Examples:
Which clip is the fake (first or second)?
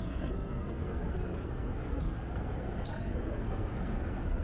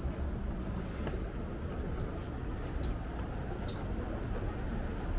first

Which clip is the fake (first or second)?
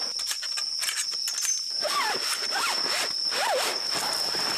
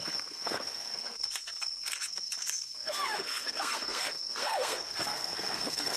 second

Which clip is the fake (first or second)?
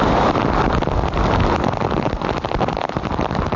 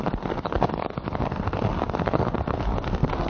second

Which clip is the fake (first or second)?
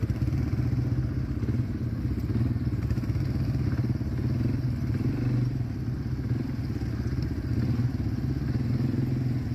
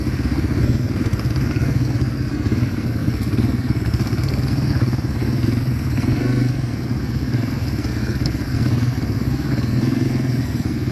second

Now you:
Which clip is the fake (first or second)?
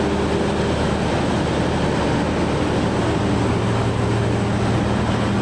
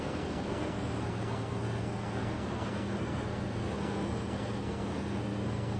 second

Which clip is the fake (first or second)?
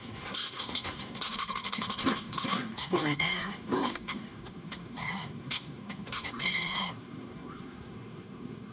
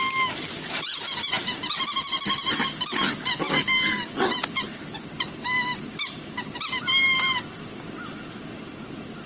first